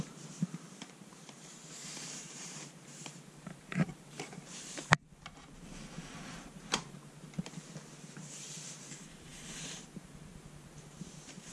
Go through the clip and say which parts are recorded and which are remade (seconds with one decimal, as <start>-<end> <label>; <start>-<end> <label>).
0.0-11.5 remade